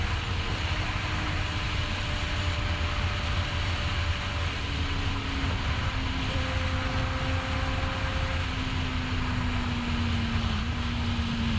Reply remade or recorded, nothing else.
recorded